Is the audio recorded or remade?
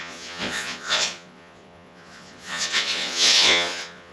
remade